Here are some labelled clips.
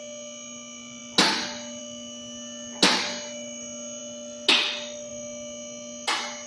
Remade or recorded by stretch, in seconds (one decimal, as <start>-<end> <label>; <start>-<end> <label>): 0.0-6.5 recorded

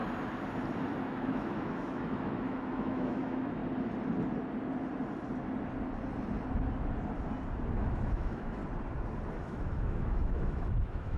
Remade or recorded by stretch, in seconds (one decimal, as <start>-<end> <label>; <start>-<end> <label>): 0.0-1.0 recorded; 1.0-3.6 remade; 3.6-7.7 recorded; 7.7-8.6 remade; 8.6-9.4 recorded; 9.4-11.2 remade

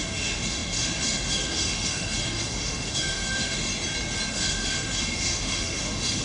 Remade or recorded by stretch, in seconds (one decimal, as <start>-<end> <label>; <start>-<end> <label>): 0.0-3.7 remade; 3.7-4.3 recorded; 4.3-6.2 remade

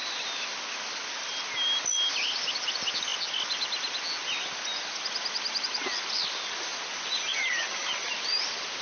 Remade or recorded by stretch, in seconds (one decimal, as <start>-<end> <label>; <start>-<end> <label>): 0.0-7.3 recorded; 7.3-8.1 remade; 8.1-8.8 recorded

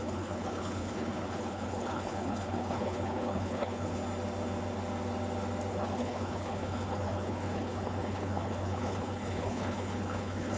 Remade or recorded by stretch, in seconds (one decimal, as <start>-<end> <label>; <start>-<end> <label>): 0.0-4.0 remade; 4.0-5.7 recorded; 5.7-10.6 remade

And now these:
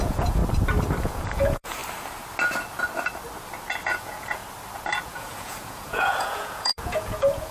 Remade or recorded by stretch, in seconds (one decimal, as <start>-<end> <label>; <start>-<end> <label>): 0.0-0.4 remade; 0.4-1.0 recorded; 1.0-1.8 remade; 1.8-3.8 recorded; 3.8-4.4 remade; 4.4-5.0 recorded; 5.0-7.5 remade